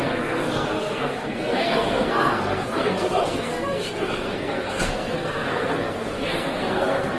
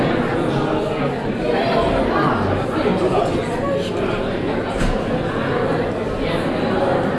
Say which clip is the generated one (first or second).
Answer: first